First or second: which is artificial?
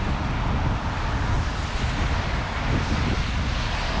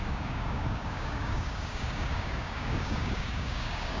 second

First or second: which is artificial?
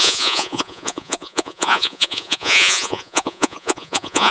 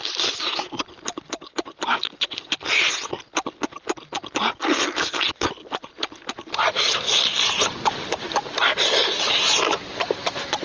first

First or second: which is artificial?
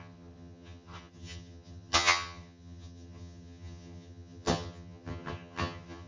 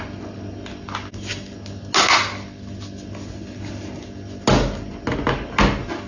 first